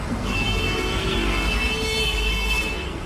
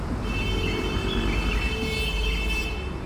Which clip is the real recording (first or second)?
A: second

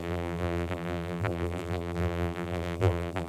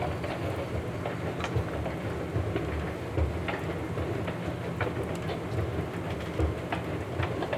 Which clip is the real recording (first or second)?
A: second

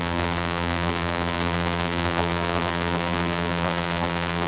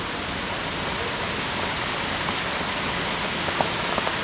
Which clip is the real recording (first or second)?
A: second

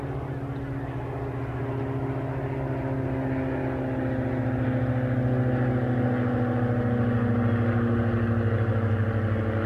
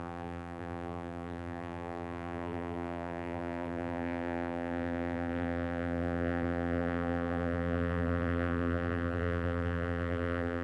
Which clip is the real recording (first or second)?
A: first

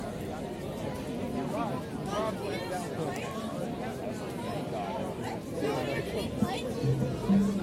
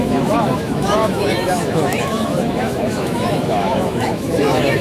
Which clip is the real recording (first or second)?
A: first